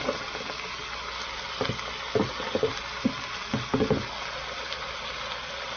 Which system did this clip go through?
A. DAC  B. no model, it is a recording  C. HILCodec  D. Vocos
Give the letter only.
B